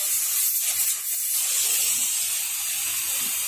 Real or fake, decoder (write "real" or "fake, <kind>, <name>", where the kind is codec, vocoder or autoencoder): real